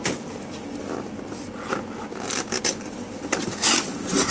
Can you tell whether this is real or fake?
real